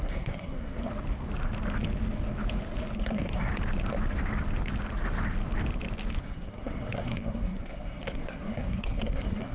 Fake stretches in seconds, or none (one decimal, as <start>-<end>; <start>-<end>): 0.0-0.9; 3.0-3.5; 6.2-9.5